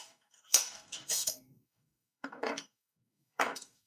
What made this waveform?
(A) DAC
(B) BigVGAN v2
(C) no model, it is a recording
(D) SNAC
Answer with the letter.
A